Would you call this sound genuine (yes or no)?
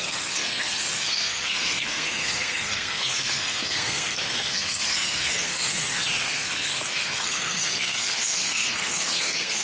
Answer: no